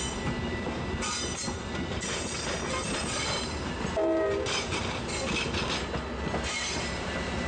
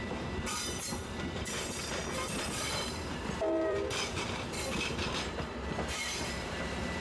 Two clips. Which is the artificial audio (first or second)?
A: second